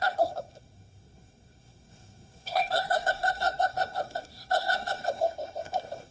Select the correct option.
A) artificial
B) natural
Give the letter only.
A